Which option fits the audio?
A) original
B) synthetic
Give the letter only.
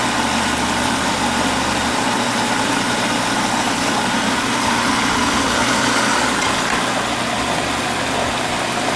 A